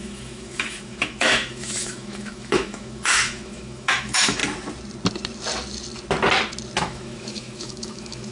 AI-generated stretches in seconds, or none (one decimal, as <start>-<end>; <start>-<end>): 0.0-4.4; 6.8-8.3